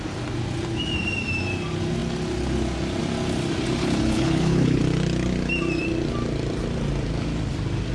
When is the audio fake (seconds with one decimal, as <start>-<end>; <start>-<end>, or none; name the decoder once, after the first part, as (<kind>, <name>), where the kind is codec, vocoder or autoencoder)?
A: 3.8-4.8 (codec, HILCodec)